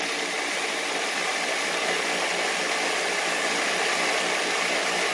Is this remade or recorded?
recorded